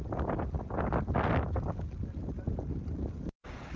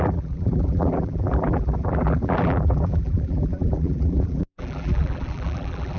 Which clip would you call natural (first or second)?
first